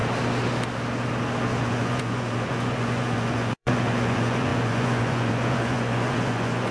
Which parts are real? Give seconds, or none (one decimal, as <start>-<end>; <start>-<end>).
0.0-1.6